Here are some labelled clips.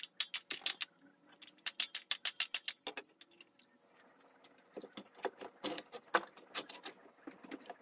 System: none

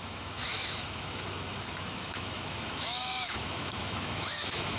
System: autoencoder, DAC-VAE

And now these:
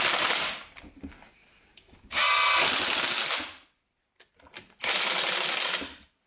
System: none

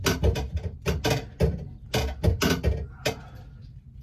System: none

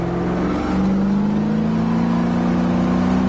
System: none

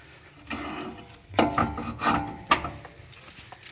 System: none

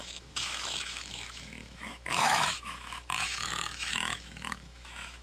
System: autoencoder, DAC-VAE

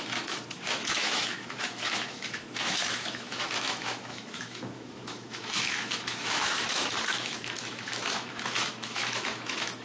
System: autoencoder, DAC-VAE